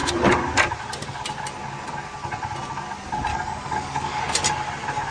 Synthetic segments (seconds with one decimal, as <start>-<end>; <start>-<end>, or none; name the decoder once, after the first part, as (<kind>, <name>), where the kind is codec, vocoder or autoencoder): 3.3-4.2 (codec, DAC)